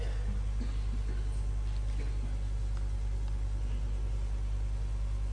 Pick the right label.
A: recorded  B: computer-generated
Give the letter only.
A